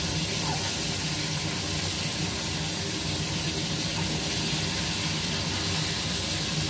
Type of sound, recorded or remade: recorded